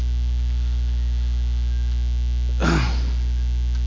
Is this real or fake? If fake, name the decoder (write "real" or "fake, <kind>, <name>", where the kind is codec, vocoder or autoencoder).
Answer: real